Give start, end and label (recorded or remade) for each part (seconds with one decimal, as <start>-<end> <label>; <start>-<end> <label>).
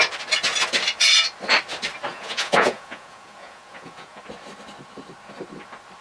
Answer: 0.0-2.1 recorded; 2.1-4.2 remade; 4.2-6.0 recorded